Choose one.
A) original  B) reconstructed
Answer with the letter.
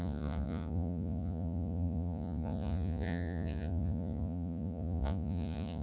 B